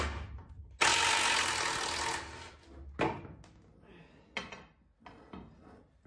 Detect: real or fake real